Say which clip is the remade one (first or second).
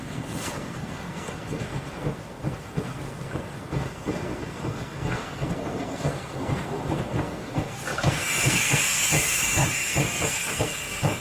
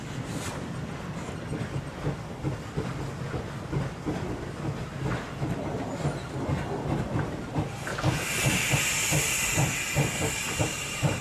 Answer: first